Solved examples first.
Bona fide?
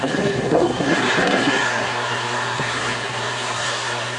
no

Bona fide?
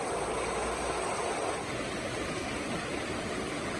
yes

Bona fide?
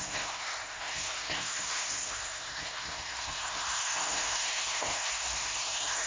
no